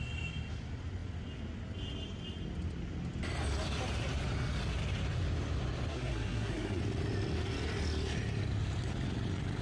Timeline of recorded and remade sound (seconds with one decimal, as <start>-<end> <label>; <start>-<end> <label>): 0.0-5.9 recorded; 5.9-6.8 remade; 6.8-9.6 recorded